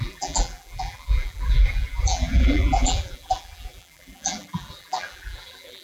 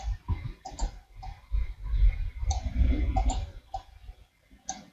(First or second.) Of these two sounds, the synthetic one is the first